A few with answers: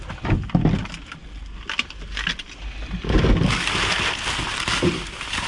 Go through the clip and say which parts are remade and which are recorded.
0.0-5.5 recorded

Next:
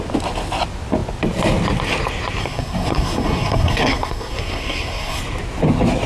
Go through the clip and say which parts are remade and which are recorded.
0.0-2.4 recorded; 2.4-5.2 remade; 5.2-6.1 recorded

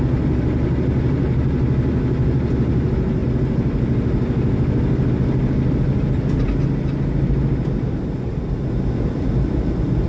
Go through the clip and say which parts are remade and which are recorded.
0.0-10.1 recorded

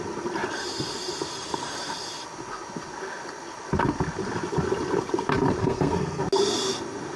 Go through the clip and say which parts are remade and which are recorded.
0.0-5.6 recorded; 5.6-6.2 remade; 6.2-7.2 recorded

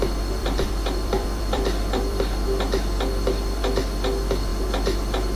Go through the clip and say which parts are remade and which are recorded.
0.0-0.4 recorded; 0.4-3.6 remade; 3.6-5.4 recorded

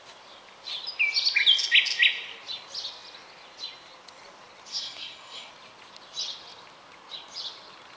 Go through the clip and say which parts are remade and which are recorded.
0.0-4.7 recorded; 4.7-5.5 remade; 5.5-8.0 recorded